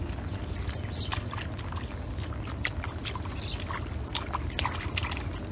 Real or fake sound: real